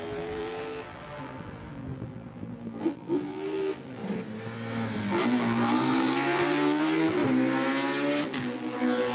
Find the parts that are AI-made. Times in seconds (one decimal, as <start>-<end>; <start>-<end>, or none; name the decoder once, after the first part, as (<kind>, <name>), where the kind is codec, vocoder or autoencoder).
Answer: 0.0-4.0 (vocoder, BigVGAN v2); 5.0-7.2; 8.2-9.1